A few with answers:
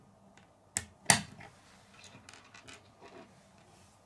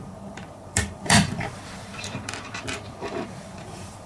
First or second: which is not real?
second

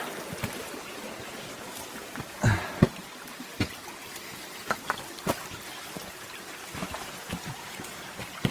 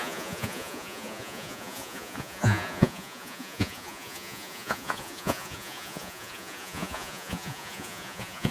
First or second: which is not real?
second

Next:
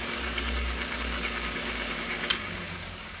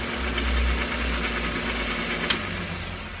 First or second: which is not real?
first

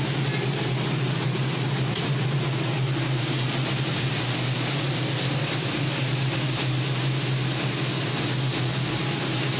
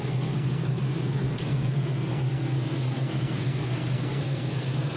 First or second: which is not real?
second